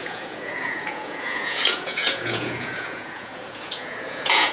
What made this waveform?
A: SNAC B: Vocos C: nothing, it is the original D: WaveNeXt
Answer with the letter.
B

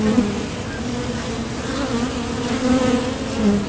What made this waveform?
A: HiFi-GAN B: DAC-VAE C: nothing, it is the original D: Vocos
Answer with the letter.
C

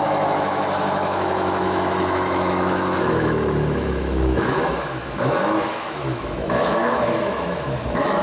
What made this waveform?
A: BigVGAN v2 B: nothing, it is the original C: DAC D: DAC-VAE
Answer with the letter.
D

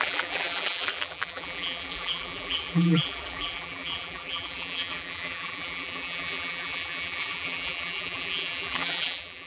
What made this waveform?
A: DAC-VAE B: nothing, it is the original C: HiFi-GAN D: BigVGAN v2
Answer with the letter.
D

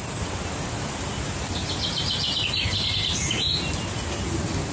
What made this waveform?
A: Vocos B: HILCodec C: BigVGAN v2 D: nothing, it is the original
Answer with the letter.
D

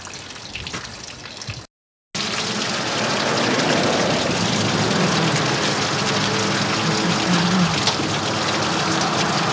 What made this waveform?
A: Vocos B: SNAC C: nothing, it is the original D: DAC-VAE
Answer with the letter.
C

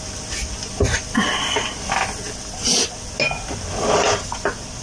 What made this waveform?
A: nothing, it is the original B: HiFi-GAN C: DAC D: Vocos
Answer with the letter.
A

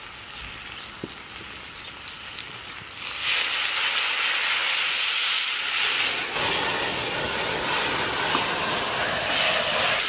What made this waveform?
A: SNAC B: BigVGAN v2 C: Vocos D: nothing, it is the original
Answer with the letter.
D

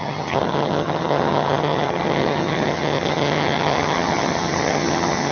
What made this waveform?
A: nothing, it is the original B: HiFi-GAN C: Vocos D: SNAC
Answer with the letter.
B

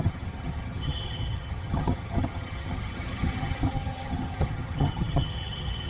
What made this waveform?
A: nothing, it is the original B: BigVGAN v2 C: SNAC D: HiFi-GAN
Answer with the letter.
D